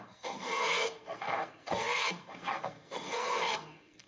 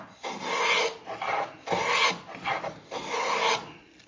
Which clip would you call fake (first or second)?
first